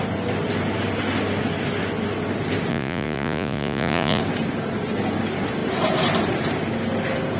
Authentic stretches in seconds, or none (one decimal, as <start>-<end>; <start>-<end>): 0.0-2.7; 4.2-7.4